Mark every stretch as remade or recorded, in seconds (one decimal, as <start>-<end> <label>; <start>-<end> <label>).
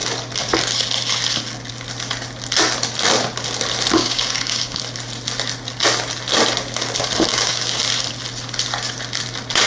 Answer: 0.0-4.0 recorded; 4.0-4.8 remade; 4.8-7.3 recorded; 7.3-7.8 remade; 7.8-9.7 recorded